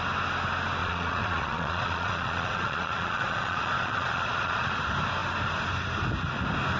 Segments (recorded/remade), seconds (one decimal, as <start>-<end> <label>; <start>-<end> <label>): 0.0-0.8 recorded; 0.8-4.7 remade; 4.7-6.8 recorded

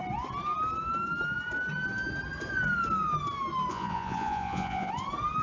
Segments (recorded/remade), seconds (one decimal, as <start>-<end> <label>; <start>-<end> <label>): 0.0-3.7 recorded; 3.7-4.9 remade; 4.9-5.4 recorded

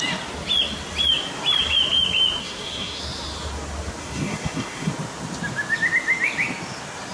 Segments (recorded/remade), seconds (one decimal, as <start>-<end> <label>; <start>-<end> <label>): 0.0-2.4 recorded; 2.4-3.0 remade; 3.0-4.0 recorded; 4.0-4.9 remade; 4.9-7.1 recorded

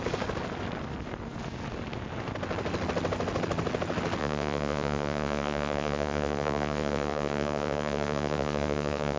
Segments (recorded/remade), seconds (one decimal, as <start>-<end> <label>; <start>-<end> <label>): 0.0-4.2 recorded; 4.2-9.2 remade

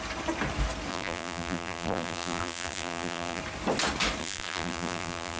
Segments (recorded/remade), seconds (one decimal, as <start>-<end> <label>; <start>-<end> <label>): 0.0-0.9 recorded; 0.9-3.4 remade; 3.4-4.2 recorded; 4.2-5.4 remade